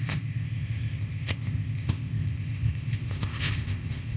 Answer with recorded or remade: remade